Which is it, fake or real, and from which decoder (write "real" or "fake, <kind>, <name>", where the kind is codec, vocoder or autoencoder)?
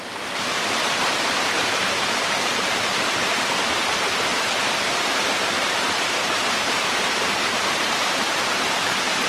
fake, vocoder, BigVGAN v2